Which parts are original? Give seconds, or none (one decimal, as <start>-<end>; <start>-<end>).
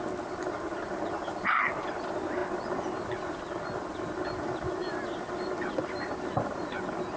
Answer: 0.0-7.2